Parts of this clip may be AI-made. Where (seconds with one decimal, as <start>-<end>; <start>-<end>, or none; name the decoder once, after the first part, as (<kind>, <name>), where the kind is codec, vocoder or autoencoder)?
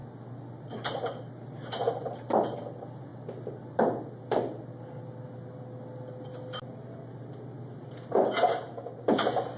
none